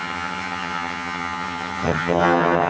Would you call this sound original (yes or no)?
no